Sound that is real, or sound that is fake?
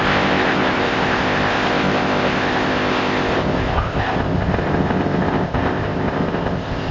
fake